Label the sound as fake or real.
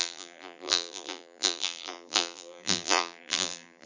fake